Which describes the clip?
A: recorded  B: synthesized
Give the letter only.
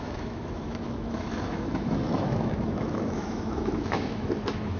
B